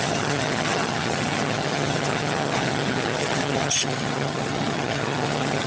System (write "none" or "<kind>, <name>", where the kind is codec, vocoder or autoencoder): vocoder, HiFi-GAN